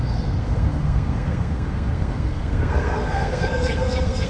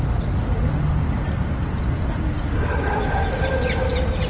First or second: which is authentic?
second